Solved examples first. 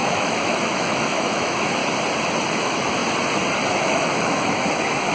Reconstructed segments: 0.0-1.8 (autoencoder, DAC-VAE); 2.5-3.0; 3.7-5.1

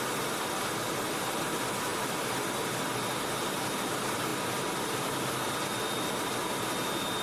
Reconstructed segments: none

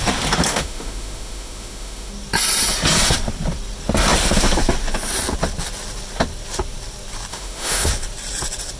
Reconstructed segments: 0.5-2.1 (autoencoder, DAC-VAE); 7.3-7.9

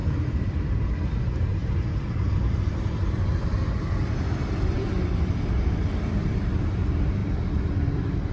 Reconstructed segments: 0.0-1.0 (vocoder, BigVGAN v2); 1.6-6.6